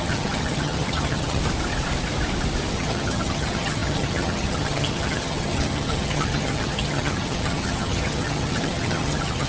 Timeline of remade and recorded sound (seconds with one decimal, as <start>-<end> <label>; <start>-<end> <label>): 0.0-1.4 remade; 1.4-2.7 recorded; 2.7-9.5 remade